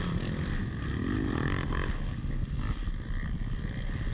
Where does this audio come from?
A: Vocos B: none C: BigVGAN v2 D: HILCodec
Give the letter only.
B